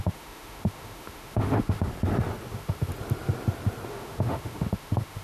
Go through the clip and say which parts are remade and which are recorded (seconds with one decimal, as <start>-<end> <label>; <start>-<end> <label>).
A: 0.0-1.9 remade; 1.9-2.5 recorded; 2.5-2.9 remade; 2.9-3.9 recorded; 3.9-5.2 remade